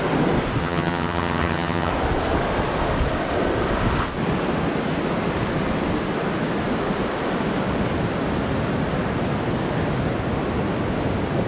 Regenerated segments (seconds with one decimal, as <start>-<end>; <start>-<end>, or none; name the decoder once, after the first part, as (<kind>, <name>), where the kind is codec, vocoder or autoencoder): 0.6-1.9 (vocoder, HiFi-GAN)